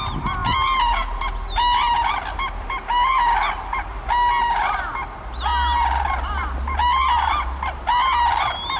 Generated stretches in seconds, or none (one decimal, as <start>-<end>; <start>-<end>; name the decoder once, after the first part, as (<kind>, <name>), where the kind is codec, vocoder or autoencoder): none